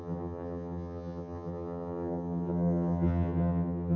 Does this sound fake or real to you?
fake